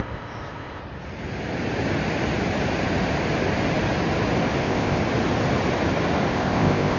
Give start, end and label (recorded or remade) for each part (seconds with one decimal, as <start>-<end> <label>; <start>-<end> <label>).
0.0-0.8 remade; 0.8-4.6 recorded; 4.6-5.0 remade; 5.0-6.3 recorded; 6.3-7.0 remade